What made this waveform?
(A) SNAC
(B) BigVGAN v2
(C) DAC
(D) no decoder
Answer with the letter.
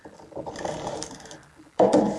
B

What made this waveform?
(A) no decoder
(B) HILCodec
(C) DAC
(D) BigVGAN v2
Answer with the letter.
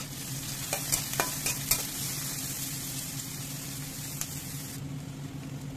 A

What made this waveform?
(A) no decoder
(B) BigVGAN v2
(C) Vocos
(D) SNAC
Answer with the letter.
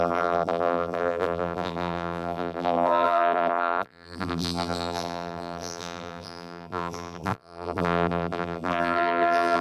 B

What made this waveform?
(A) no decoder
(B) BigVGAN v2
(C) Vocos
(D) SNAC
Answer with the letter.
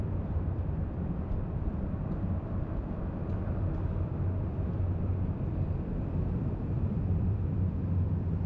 B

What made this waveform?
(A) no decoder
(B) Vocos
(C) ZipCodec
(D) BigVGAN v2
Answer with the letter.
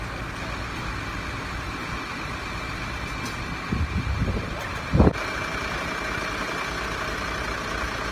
A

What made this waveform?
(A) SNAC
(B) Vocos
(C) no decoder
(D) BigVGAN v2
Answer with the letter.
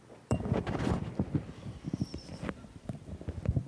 D